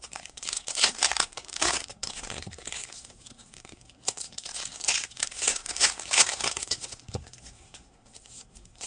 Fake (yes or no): yes